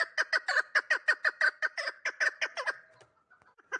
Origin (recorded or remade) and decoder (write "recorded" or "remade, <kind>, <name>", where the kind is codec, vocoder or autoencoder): recorded